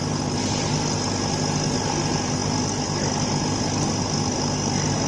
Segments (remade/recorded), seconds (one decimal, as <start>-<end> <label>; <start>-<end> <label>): 0.0-5.1 recorded